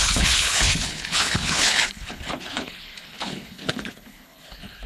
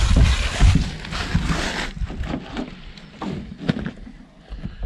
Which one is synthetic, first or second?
first